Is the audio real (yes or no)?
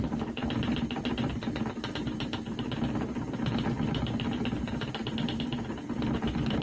yes